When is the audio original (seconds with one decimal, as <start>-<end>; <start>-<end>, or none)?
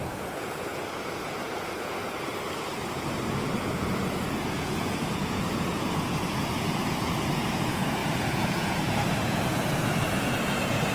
2.0-3.6